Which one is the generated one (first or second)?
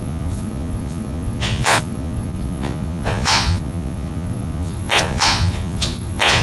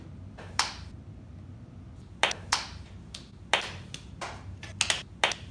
first